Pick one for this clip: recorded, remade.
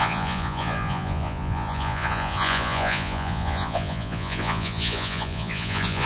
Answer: remade